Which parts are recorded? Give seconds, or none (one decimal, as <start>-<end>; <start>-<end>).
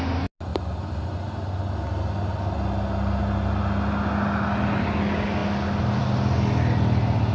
0.0-7.3